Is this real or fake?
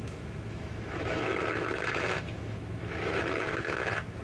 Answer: fake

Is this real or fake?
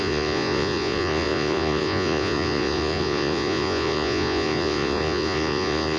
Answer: fake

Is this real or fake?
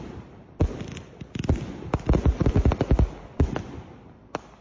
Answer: real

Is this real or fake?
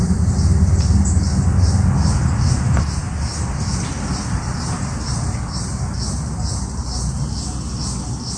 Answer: real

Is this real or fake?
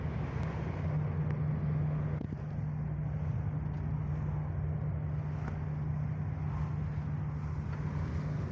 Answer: real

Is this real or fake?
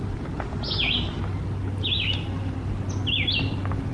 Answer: real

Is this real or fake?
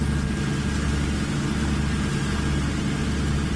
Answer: real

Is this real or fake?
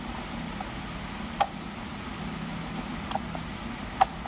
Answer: real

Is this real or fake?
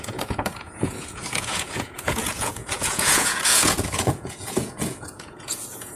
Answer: fake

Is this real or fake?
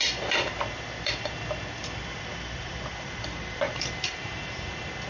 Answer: fake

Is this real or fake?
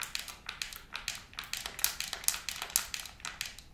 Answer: real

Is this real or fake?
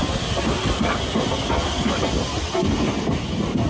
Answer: real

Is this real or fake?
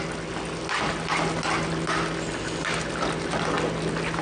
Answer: real